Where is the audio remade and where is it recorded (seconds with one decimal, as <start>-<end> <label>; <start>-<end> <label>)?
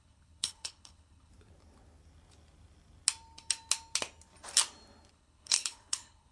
0.0-1.3 remade; 1.3-5.1 recorded; 5.1-6.3 remade